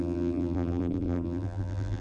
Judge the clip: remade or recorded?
remade